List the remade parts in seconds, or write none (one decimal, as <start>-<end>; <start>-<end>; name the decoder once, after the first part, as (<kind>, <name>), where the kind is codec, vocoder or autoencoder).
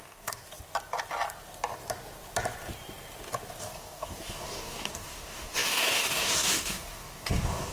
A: 0.0-0.4 (codec, DAC); 3.6-7.7